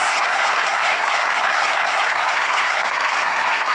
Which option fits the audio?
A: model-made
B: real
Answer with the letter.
A